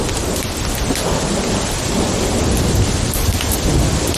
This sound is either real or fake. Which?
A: real